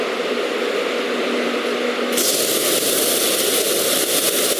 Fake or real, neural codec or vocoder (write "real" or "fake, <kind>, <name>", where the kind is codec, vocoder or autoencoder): real